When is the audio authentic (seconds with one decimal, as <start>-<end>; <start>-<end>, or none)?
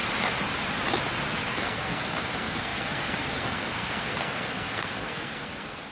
0.0-1.4